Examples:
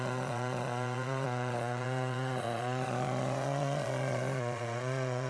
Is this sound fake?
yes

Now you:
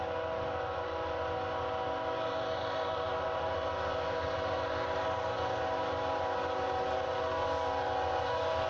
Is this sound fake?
no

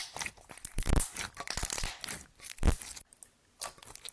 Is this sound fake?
no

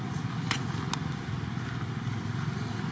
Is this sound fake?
no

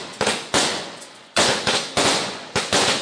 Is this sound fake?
yes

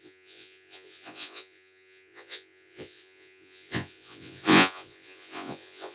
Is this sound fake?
yes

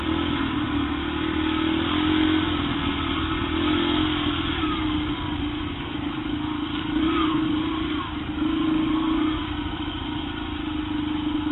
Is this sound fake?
no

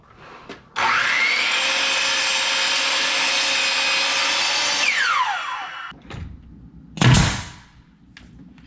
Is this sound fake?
no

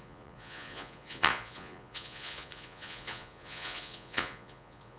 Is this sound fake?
yes